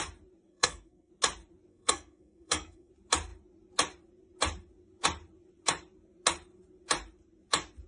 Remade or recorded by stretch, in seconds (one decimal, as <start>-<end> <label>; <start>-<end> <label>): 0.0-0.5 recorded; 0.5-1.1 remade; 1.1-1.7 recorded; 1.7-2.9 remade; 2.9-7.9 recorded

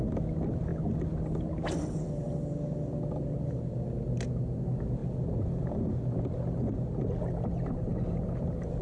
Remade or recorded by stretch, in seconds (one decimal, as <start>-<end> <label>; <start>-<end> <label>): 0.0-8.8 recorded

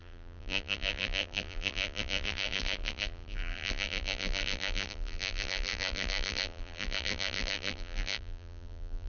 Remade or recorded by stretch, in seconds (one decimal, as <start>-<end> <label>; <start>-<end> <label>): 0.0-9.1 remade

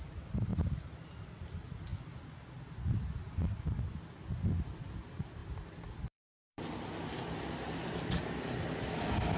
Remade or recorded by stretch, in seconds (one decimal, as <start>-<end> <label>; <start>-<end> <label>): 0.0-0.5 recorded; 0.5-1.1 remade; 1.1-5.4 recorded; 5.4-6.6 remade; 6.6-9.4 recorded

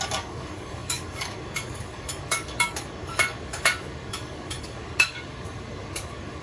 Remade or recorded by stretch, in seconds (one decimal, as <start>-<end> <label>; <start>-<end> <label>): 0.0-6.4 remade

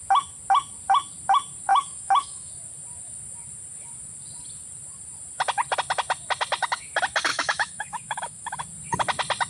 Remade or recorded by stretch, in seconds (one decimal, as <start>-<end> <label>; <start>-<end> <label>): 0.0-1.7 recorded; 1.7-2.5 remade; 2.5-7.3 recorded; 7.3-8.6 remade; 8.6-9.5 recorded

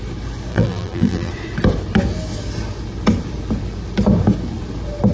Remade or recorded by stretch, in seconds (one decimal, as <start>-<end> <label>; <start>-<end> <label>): 0.0-0.5 recorded; 0.5-1.3 remade; 1.3-5.1 recorded

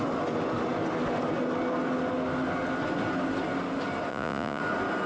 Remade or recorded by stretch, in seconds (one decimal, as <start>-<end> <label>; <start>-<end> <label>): 0.0-4.1 recorded; 4.1-4.6 remade; 4.6-5.1 recorded